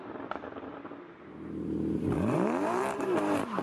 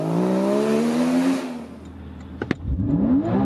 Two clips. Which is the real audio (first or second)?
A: second